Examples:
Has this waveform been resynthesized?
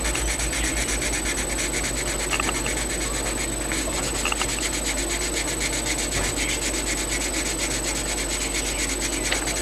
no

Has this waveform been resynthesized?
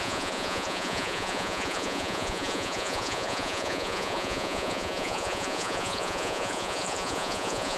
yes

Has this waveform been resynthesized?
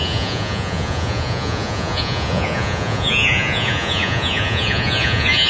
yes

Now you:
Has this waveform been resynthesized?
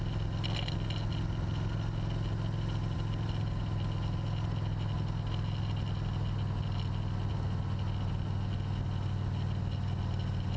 no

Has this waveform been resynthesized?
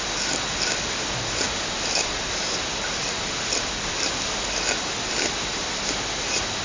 no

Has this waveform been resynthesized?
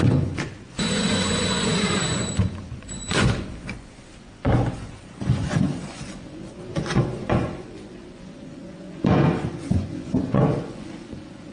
yes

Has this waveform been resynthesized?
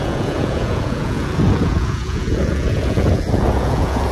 yes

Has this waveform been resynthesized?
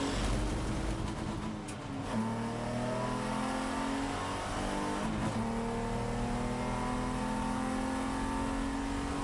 no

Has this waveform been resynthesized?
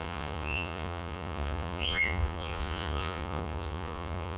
yes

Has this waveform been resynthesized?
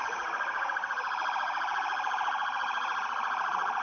yes